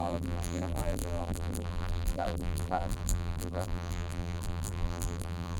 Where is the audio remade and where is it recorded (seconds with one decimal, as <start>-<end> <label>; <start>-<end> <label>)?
0.0-5.6 remade